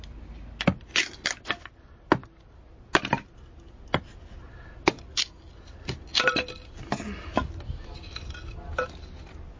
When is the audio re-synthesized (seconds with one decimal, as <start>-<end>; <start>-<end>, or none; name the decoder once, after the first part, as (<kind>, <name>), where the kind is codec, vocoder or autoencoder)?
none